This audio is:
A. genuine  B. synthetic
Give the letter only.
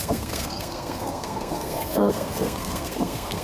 B